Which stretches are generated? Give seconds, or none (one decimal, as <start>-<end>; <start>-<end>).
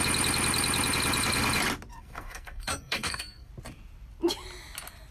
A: 1.9-3.5